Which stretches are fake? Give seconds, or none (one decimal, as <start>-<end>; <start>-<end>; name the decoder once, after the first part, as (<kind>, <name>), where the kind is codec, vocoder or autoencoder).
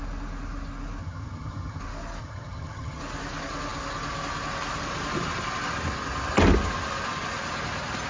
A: 1.0-1.8 (vocoder, HiFi-GAN); 2.2-3.0